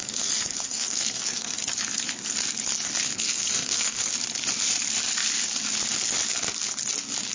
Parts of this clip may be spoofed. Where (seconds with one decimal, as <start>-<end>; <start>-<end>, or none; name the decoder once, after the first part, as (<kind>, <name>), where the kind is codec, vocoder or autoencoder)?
0.0-1.6 (codec, SNAC); 3.1-4.1